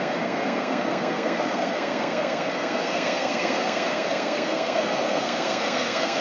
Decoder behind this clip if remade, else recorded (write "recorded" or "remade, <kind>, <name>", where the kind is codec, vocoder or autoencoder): remade, codec, SNAC